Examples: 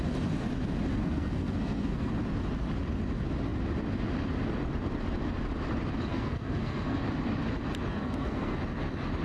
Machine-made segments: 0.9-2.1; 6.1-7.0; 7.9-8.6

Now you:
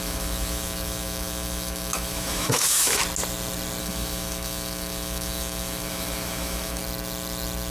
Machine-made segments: 0.0-3.0; 3.8-6.8